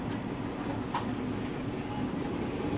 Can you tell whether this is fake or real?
real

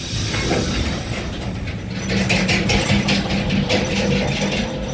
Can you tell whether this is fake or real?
real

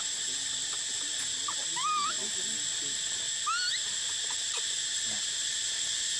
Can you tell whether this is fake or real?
real